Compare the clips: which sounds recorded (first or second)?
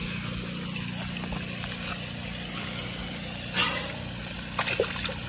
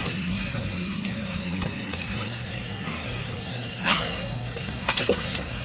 first